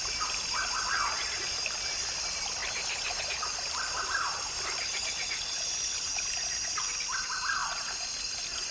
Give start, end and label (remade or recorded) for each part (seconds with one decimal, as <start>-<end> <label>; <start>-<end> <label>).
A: 0.0-2.6 recorded; 2.6-3.2 remade; 3.2-7.6 recorded; 7.6-8.7 remade